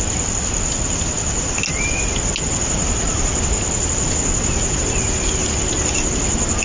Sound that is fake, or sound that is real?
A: real